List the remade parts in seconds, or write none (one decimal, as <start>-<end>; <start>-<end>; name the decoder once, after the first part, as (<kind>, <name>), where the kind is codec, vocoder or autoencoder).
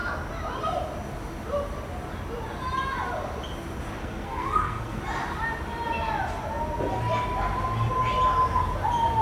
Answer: 4.0-5.0 (codec, SNAC)